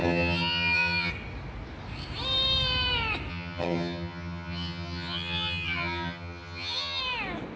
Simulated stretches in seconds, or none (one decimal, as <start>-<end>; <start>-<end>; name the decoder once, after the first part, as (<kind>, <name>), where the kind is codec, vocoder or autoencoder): 0.0-1.1 (vocoder, HiFi-GAN); 3.3-7.0